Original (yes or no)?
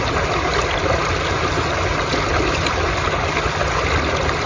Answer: yes